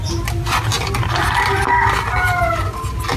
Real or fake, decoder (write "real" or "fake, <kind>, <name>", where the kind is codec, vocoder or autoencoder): real